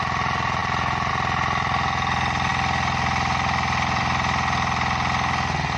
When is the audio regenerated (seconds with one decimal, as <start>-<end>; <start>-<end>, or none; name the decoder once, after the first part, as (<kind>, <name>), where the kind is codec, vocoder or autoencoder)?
none